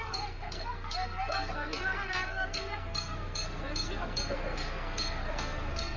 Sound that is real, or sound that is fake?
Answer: fake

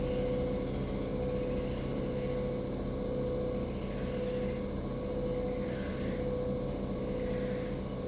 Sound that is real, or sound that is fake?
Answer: real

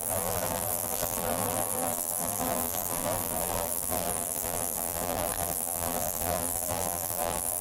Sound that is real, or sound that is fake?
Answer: fake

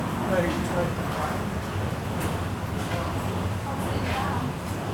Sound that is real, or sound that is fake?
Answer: real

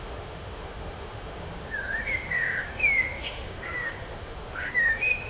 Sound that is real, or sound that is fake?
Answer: fake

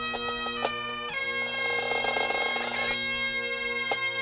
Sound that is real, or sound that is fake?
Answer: real